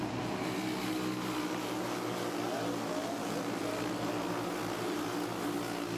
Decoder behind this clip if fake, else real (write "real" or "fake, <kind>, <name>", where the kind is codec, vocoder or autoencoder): real